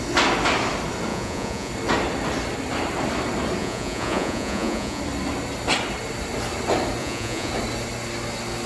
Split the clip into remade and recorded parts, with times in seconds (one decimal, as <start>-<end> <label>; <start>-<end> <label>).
0.0-1.1 recorded; 1.1-1.7 remade; 1.7-3.6 recorded; 3.6-5.0 remade; 5.0-7.0 recorded; 7.0-7.5 remade; 7.5-8.7 recorded